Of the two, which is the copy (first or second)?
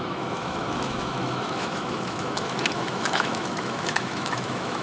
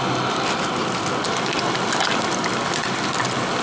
first